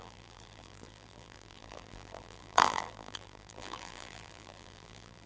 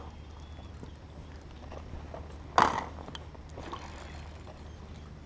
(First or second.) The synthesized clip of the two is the first